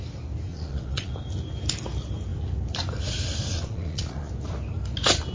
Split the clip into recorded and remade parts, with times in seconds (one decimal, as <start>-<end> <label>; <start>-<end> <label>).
0.0-0.5 recorded; 0.5-1.1 remade; 1.1-3.5 recorded; 3.5-4.3 remade; 4.3-5.3 recorded